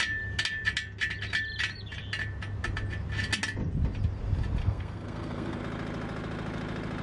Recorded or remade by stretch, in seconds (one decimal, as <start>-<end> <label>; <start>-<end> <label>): 0.0-4.6 recorded; 4.6-5.6 remade; 5.6-7.0 recorded